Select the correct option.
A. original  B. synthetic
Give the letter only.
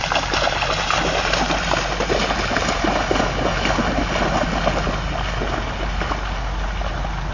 A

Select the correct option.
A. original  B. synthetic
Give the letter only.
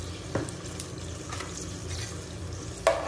A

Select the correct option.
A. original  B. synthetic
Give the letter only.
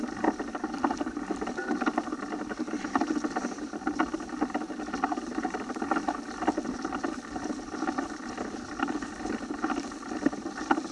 A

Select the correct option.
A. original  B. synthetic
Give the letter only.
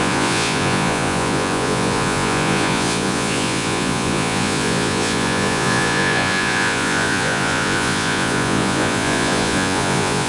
B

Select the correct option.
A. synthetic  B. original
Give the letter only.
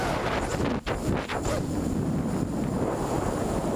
A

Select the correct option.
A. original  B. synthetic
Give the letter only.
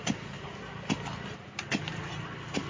A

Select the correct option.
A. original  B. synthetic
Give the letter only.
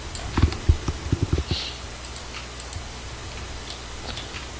A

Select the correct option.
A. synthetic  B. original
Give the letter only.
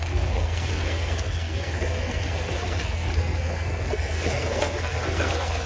A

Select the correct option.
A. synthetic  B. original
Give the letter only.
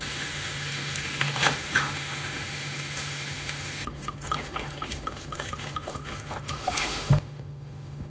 A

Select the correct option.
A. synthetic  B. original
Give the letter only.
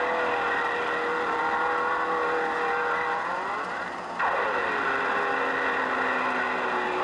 B